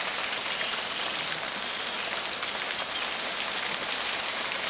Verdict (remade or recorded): recorded